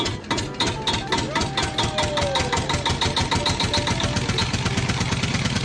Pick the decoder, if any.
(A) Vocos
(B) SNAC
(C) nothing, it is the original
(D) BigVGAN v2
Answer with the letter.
C